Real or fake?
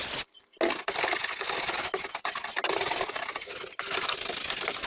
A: real